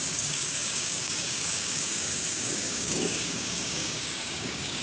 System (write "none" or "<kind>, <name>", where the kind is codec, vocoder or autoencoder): codec, DAC